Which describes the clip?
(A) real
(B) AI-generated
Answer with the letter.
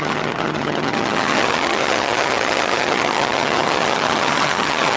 B